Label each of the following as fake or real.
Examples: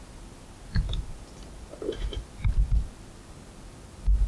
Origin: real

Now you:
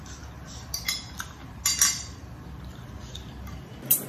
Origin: real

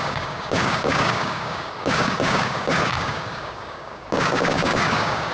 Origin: fake